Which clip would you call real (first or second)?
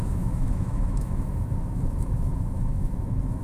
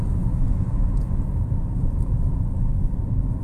second